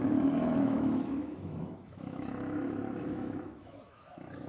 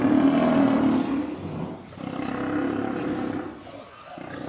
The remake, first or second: first